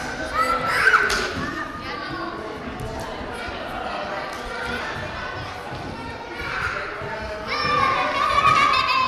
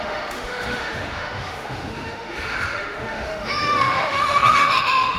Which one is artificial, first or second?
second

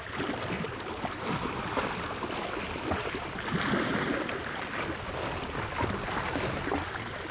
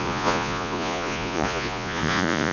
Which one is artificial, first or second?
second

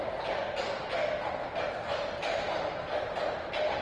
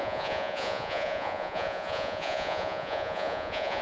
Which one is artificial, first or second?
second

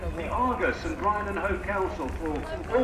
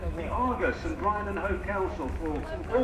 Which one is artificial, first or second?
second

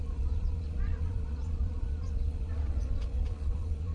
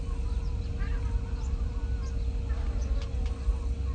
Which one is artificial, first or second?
first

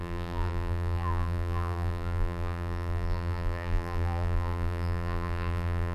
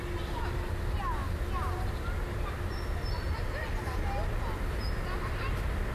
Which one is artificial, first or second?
first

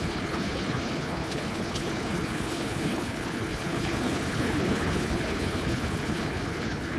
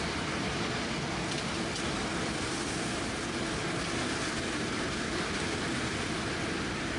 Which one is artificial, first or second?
first